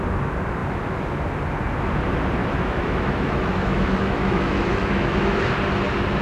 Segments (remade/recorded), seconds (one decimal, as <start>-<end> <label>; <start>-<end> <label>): 0.0-2.4 recorded; 2.4-5.4 remade; 5.4-6.2 recorded